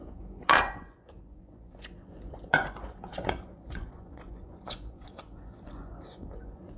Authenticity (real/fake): fake